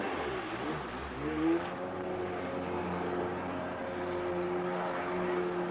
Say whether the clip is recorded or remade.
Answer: recorded